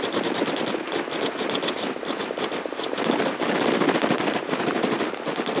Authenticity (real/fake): real